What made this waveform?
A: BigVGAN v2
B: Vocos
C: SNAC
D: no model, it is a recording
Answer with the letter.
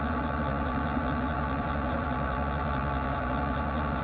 B